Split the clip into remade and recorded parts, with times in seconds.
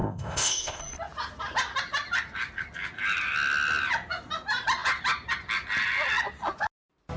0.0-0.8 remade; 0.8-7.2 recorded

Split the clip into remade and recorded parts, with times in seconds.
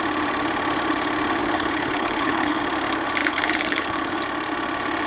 0.0-1.4 recorded; 1.4-2.6 remade; 2.6-3.2 recorded; 3.2-4.1 remade; 4.1-5.1 recorded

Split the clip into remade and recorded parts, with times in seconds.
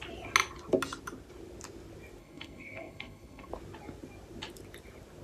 0.0-2.2 recorded; 2.2-3.5 remade; 3.5-5.2 recorded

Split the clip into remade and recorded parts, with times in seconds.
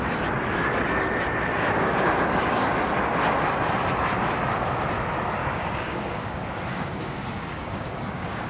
0.0-1.5 recorded; 1.5-2.7 remade; 2.7-5.4 recorded; 5.4-8.5 remade